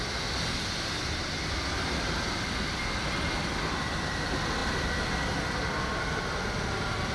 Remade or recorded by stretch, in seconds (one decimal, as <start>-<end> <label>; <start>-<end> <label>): 0.0-7.1 recorded